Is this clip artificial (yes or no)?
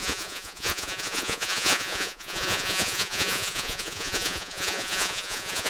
yes